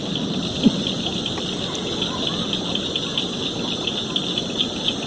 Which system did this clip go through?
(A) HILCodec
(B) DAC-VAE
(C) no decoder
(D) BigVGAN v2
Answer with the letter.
C